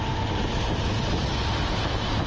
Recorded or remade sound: recorded